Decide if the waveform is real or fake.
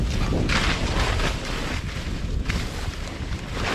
real